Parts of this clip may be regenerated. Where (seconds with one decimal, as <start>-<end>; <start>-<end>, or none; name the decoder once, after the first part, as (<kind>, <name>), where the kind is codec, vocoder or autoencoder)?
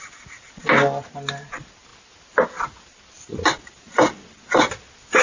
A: none